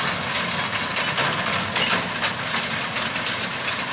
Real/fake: real